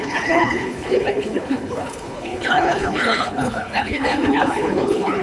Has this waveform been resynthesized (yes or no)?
yes